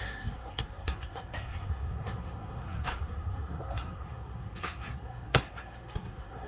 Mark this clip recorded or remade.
remade